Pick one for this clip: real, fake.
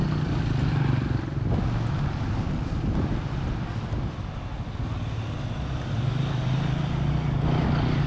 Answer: real